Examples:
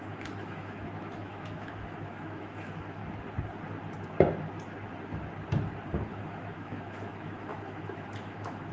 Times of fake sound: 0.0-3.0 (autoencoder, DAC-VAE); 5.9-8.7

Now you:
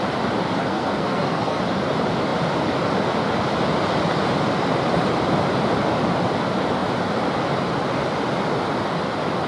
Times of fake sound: 0.6-1.6 (codec, SNAC)

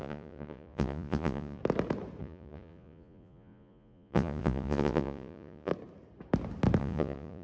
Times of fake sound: 0.0-1.6 (vocoder, Vocos); 2.2-5.7; 6.8-7.4

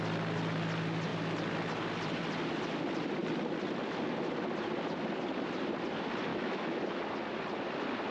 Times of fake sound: 6.3-7.0 (autoencoder, DAC-VAE)

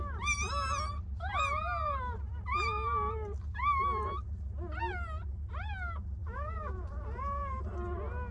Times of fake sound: 6.2-7.6 (vocoder, Vocos)

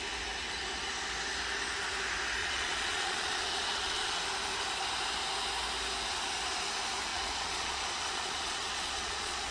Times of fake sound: 2.4-4.2 (vocoder, Vocos); 7.1-9.5

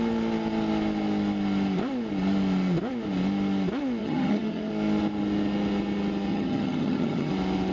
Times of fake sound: 4.0-4.7 (vocoder, HiFi-GAN); 6.3-7.3